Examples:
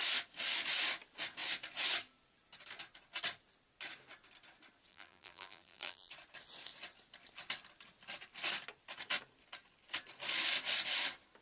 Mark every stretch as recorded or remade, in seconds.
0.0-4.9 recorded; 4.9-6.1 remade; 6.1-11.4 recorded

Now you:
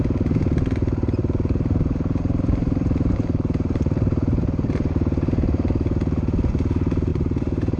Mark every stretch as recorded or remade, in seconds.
0.0-1.2 recorded; 1.2-5.3 remade; 5.3-7.1 recorded; 7.1-7.8 remade

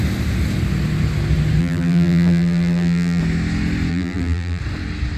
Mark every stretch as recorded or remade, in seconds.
0.0-1.6 recorded; 1.6-3.2 remade; 3.2-3.9 recorded; 3.9-4.6 remade; 4.6-5.2 recorded